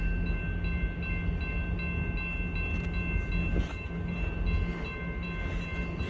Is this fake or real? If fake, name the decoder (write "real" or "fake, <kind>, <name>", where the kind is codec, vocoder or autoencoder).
real